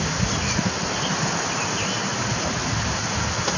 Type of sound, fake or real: real